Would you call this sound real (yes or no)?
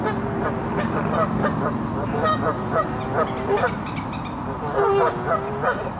yes